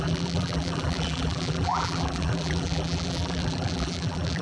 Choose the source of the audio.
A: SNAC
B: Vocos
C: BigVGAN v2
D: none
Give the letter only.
C